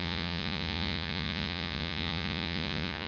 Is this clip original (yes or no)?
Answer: no